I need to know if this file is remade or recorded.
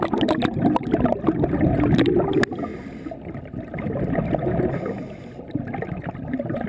recorded